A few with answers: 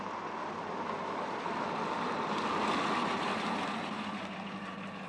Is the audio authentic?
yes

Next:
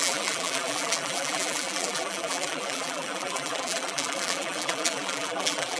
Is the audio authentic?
no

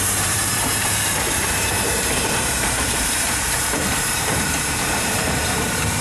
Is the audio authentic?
no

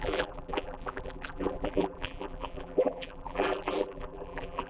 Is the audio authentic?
no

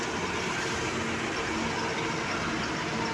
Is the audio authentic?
yes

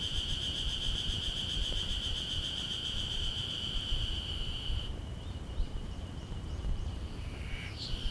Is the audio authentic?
no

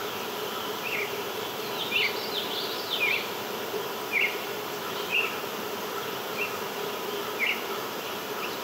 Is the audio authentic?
no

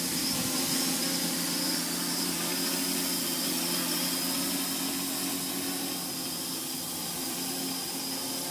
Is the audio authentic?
yes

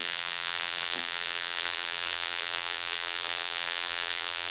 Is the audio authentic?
no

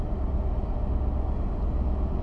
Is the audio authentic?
yes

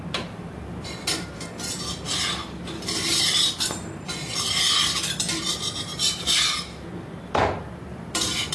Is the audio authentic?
no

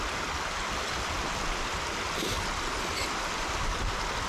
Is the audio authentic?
yes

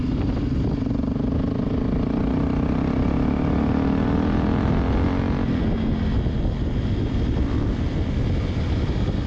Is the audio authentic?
yes